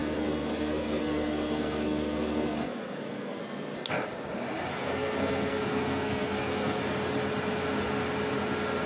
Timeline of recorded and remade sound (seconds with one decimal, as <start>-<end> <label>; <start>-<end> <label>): 0.0-3.4 remade; 3.4-4.7 recorded; 4.7-6.8 remade; 6.8-8.9 recorded